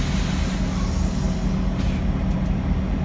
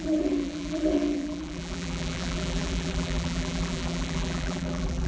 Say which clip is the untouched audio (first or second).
first